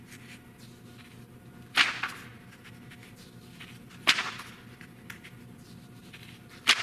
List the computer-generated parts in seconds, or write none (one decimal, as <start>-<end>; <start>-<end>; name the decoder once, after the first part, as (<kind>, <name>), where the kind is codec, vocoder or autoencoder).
2.3-6.8 (vocoder, BigVGAN v2)